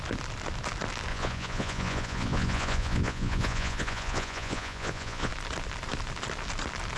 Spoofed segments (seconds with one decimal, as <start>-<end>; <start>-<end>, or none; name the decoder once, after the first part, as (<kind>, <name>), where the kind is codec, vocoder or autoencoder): 1.1-5.3 (vocoder, Vocos)